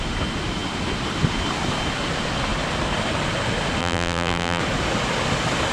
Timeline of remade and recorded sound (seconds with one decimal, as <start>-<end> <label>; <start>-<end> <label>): 0.0-3.8 recorded; 3.8-4.6 remade; 4.6-5.7 recorded